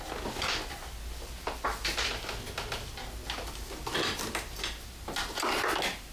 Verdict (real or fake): real